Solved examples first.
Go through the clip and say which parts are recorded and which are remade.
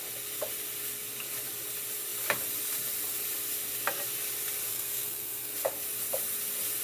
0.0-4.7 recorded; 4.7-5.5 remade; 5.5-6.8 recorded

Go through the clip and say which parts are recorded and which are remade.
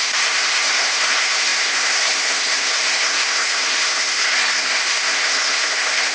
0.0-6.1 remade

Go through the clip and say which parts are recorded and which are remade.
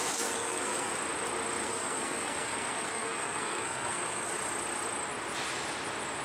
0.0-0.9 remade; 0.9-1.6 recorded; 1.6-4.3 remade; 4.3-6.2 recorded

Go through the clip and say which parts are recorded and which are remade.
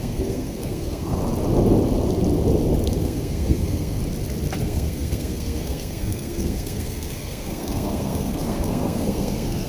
0.0-1.2 remade; 1.2-2.9 recorded; 2.9-4.0 remade; 4.0-4.6 recorded; 4.6-9.7 remade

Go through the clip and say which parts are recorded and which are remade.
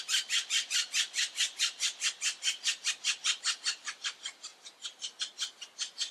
0.0-6.1 recorded